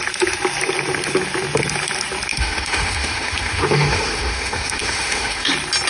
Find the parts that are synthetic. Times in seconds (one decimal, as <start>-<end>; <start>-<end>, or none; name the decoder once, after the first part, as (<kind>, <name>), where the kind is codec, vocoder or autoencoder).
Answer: 2.3-5.5 (autoencoder, DAC-VAE)